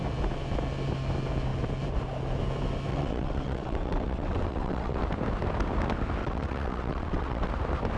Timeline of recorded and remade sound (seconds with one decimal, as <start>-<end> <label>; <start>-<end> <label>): 0.0-2.9 recorded; 2.9-5.0 remade; 5.0-6.2 recorded; 6.2-7.5 remade; 7.5-8.0 recorded